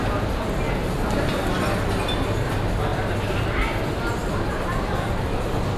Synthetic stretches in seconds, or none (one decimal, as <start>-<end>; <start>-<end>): none